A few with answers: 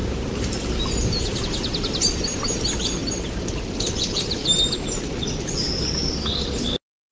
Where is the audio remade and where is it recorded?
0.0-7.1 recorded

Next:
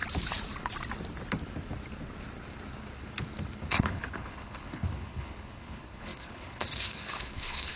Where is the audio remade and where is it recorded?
0.0-3.7 recorded; 3.7-7.8 remade

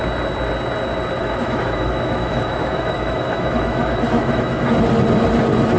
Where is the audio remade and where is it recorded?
0.0-1.2 recorded; 1.2-4.7 remade; 4.7-5.8 recorded

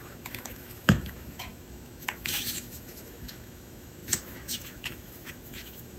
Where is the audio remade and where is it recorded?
0.0-6.0 remade